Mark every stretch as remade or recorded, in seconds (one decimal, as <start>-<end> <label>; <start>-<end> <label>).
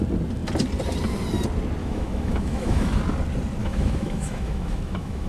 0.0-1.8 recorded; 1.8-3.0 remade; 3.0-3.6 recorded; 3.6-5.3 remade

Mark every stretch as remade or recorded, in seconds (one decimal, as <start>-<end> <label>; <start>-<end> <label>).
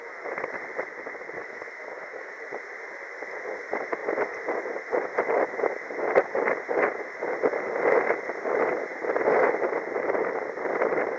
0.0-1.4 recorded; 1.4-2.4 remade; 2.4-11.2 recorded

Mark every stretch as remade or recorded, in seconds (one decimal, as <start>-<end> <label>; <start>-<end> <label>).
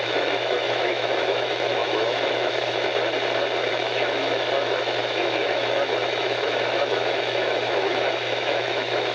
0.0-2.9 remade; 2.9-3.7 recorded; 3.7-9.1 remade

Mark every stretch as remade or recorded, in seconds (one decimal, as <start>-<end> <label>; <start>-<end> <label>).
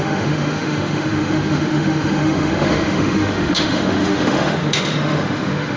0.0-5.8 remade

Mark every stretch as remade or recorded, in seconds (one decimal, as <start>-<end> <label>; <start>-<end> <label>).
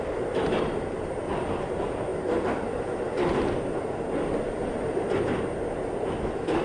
0.0-6.6 recorded